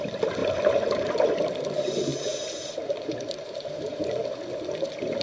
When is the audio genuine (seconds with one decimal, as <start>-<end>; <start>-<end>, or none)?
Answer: 0.0-0.4; 1.4-2.1; 4.0-5.2